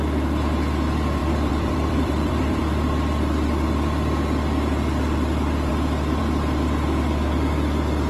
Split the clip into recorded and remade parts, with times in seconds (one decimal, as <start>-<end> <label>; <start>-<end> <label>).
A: 0.0-1.2 recorded; 1.2-2.6 remade; 2.6-8.1 recorded